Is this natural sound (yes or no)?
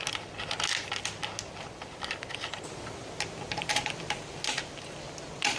yes